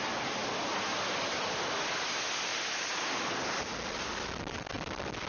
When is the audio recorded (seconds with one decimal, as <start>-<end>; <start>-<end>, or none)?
0.0-5.3